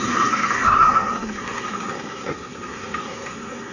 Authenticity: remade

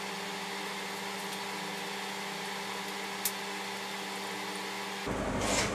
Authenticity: recorded